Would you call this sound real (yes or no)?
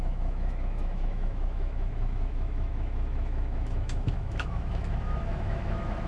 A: no